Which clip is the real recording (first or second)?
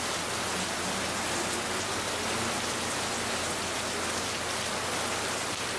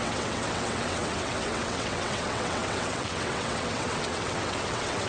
first